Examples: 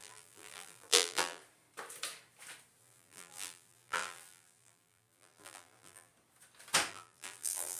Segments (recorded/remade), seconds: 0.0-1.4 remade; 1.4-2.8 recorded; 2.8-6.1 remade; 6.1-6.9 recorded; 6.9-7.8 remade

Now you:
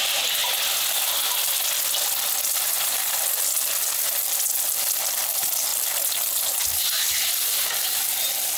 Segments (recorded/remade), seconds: 0.0-0.4 recorded; 0.4-1.7 remade; 1.7-2.4 recorded; 2.4-3.0 remade; 3.0-8.6 recorded

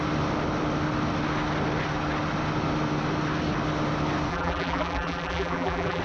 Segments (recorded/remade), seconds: 0.0-4.3 recorded; 4.3-6.0 remade

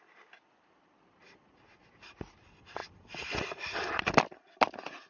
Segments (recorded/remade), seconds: 0.0-2.8 recorded; 2.8-4.4 remade; 4.4-5.1 recorded